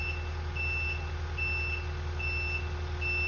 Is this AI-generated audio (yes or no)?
no